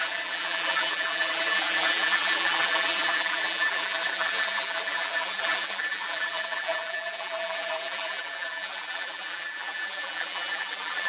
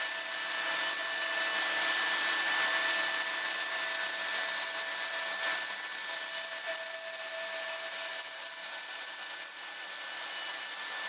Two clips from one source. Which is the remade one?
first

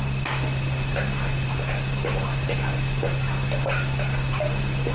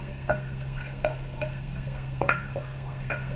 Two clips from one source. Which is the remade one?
second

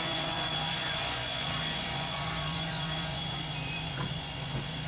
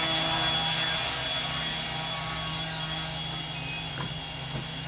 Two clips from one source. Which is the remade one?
first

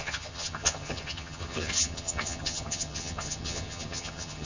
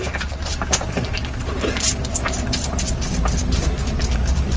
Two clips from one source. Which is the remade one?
first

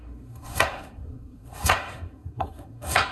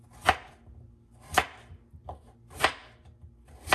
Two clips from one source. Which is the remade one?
first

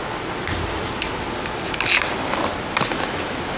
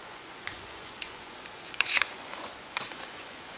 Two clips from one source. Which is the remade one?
second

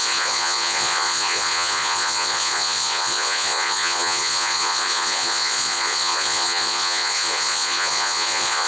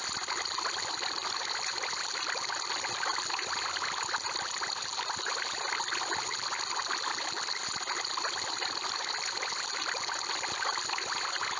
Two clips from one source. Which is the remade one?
first